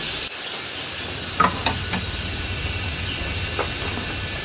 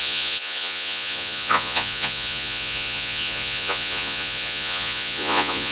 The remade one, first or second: second